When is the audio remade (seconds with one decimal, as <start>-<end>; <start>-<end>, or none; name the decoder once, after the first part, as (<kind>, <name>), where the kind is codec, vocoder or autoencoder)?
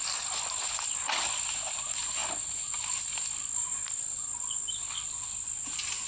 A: none